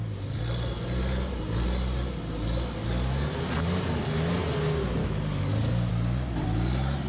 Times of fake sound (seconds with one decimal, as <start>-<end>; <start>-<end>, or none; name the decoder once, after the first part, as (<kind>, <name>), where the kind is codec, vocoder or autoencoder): 5.0-5.9 (codec, DAC)